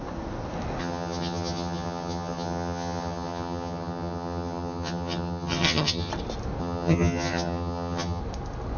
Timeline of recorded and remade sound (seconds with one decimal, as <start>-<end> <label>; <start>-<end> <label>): 0.0-0.8 recorded; 0.8-6.1 remade; 6.1-6.6 recorded; 6.6-8.2 remade; 8.2-8.8 recorded